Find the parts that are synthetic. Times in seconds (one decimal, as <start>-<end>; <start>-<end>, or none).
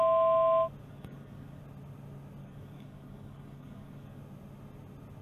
0.9-1.6; 2.4-4.2